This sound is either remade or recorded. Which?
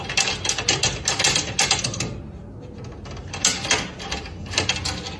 recorded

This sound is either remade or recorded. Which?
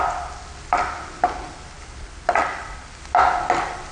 recorded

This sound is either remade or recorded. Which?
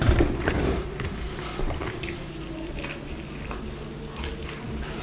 recorded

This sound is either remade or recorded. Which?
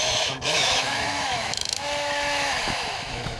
remade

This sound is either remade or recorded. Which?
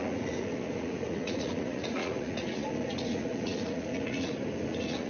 remade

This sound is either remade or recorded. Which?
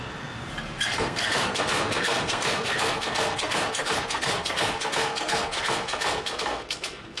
remade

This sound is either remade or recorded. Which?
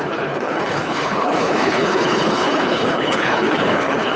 remade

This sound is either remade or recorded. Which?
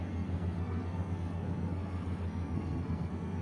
remade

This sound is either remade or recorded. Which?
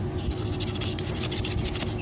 recorded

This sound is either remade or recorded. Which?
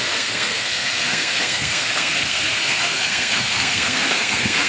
remade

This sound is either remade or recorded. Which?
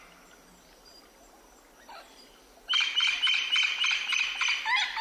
remade